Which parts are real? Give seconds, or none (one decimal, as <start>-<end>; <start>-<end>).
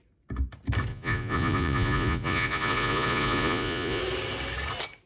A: 0.0-0.9; 4.0-5.1